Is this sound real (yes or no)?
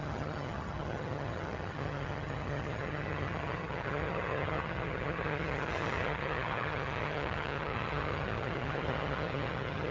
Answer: no